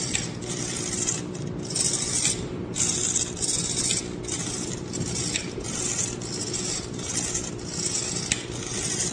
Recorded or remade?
recorded